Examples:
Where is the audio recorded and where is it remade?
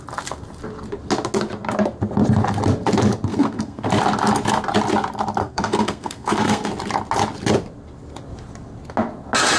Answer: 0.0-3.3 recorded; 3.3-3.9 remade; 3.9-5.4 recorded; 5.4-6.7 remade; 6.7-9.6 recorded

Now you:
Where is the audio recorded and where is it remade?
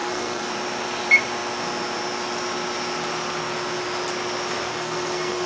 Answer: 0.0-0.5 remade; 0.5-4.7 recorded; 4.7-5.5 remade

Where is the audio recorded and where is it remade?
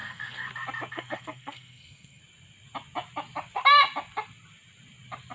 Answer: 0.0-0.5 remade; 0.5-0.9 recorded; 0.9-2.2 remade; 2.2-5.3 recorded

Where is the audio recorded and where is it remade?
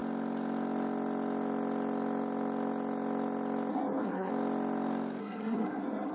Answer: 0.0-3.7 recorded; 3.7-4.3 remade; 4.3-5.2 recorded; 5.2-6.1 remade